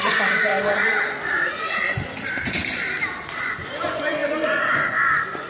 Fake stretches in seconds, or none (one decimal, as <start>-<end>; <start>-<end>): 0.0-0.5; 3.4-5.5

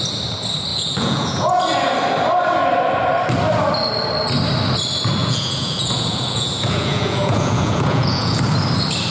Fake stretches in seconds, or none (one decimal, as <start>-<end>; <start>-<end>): 0.7-1.6; 5.2-8.4

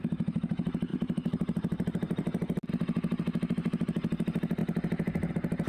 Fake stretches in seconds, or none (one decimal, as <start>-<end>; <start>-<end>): 0.9-2.7

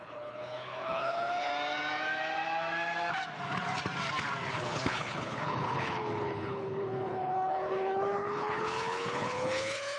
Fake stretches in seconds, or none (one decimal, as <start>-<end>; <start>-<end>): 0.0-1.5; 4.5-10.0

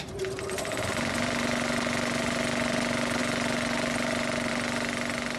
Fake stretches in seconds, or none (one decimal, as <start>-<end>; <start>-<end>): none

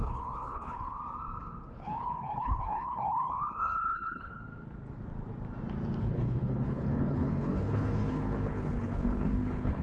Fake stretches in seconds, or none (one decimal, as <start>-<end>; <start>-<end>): 0.0-1.0; 1.7-4.4; 6.0-9.8

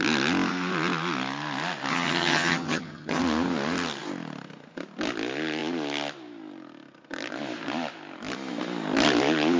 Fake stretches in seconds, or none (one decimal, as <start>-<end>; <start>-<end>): 1.9-3.2

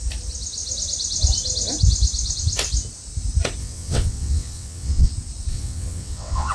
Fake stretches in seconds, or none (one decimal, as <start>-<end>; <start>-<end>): 3.6-5.1; 5.5-6.5